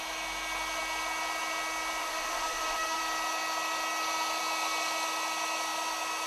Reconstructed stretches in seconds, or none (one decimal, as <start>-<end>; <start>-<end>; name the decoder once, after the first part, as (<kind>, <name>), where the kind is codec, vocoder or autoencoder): 2.0-3.0 (autoencoder, DAC-VAE)